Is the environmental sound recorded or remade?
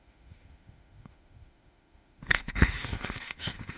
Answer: remade